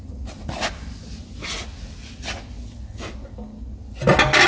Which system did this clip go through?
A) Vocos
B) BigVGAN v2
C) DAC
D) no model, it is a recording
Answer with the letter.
D